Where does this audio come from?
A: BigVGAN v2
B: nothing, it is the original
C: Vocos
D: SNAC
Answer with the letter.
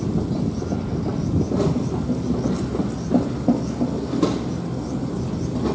B